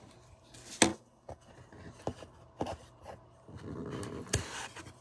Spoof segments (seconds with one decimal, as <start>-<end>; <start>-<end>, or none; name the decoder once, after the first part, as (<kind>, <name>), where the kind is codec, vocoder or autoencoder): 0.9-1.5 (codec, DAC)